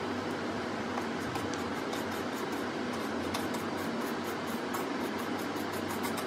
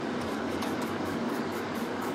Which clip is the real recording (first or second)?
first